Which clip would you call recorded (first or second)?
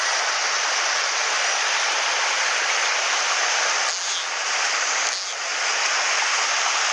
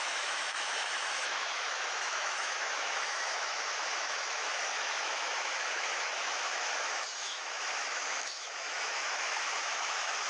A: first